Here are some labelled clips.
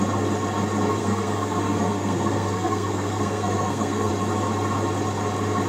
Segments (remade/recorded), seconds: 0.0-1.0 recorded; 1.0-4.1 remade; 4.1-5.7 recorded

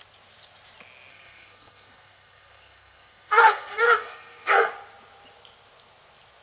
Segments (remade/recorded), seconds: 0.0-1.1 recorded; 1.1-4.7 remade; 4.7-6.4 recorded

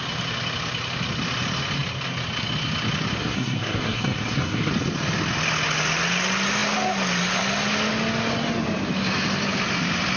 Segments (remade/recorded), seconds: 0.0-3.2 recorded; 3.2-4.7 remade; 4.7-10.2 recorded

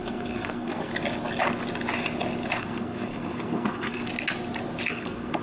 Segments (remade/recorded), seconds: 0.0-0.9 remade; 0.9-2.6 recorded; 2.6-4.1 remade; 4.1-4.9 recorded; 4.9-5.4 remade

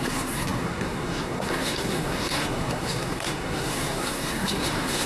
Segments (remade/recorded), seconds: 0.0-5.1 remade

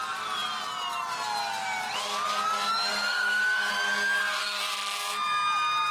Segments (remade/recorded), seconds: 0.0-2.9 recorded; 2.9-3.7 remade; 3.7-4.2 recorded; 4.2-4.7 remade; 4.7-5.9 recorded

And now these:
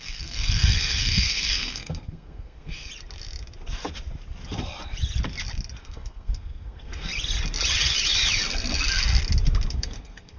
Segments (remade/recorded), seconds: 0.0-2.9 remade; 2.9-5.8 recorded; 5.8-7.1 remade; 7.1-9.7 recorded; 9.7-10.4 remade